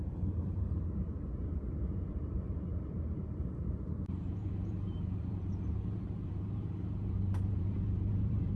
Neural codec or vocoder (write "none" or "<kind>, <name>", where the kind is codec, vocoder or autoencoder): vocoder, BigVGAN v2